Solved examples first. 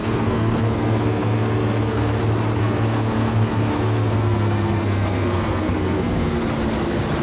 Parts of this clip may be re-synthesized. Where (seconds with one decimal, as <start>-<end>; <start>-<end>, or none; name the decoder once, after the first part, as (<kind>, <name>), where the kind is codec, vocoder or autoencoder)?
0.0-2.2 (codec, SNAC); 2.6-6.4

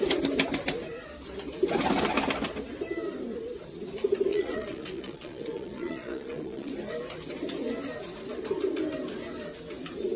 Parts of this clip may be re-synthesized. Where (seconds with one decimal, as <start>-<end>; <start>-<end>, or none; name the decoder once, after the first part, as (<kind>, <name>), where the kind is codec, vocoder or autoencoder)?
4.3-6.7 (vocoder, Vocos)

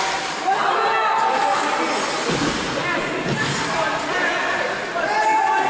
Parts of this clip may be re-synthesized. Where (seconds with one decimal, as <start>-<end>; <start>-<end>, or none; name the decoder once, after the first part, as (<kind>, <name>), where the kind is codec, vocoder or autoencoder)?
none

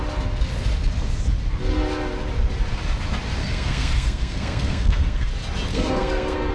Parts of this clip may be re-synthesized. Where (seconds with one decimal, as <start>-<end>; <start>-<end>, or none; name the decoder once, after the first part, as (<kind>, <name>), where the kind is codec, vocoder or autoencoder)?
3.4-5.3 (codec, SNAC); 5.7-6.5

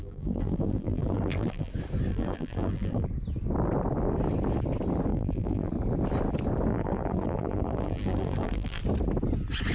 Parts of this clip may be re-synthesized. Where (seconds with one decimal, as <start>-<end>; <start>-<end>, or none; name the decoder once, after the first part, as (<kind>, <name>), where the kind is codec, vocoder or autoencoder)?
0.0-1.7 (vocoder, BigVGAN v2); 2.1-3.1; 5.1-5.7; 6.7-8.8